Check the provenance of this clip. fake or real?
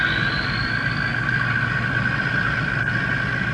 real